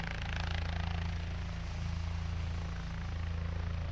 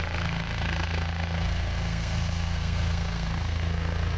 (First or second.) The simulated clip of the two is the second